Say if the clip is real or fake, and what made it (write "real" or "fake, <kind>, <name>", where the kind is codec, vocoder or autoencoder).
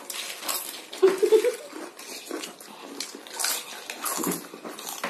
real